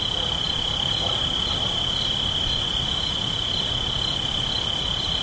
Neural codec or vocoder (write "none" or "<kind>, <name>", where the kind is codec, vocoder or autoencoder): none